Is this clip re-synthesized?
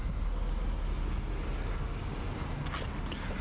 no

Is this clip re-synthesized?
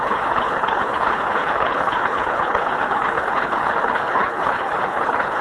yes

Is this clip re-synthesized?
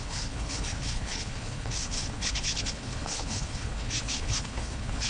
yes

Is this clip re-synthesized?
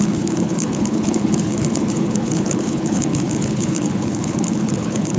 yes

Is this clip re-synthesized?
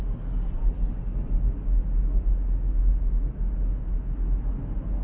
no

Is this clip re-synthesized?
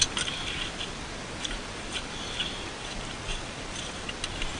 no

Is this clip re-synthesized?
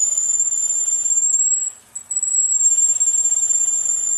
no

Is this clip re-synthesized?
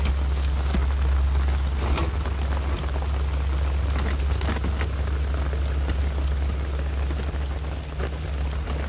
no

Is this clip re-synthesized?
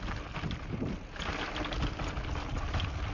no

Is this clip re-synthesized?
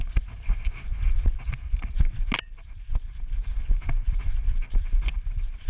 no